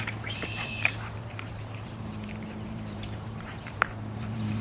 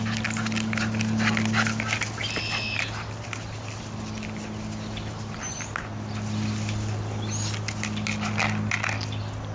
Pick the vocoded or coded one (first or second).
first